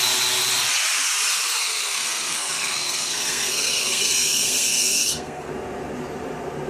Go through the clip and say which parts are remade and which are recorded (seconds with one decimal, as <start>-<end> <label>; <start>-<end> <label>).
0.0-1.5 recorded; 1.5-5.5 remade; 5.5-6.7 recorded